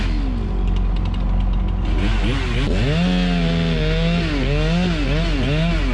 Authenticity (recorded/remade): recorded